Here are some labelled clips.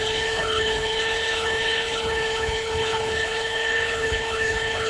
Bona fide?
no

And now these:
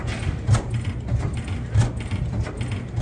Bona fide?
yes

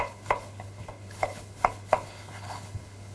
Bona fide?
no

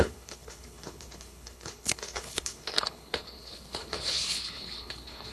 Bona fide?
no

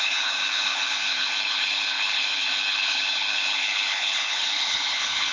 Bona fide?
no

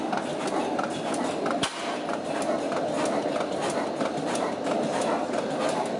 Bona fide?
yes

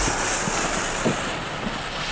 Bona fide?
yes